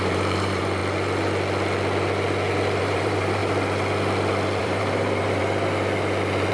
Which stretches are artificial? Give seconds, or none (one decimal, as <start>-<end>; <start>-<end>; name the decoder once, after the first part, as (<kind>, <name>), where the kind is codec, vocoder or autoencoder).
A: 0.0-0.8 (vocoder, BigVGAN v2); 2.8-3.4; 4.6-5.4